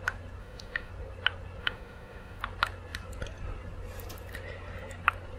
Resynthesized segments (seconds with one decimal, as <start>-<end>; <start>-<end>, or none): 0.4-0.9; 1.6-2.4